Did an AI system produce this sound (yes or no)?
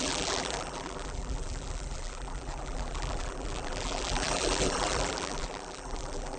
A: yes